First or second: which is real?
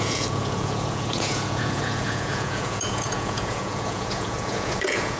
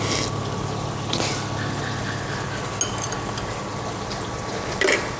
second